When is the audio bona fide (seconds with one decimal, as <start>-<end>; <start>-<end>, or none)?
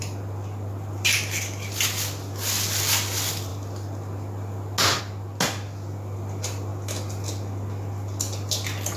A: 0.0-9.0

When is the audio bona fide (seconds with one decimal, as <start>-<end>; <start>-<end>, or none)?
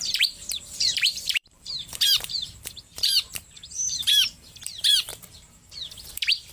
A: none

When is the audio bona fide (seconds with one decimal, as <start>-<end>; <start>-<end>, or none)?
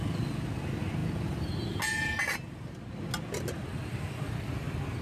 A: 0.0-5.0